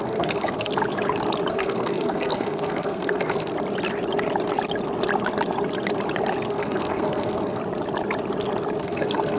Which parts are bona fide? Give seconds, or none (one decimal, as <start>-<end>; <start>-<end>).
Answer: 0.7-1.5; 3.5-6.5; 7.6-8.8